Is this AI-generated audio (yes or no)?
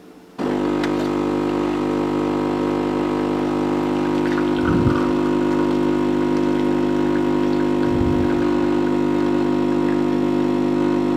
no